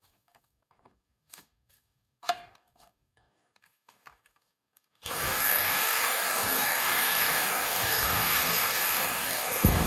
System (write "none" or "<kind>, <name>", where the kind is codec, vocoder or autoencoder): codec, DAC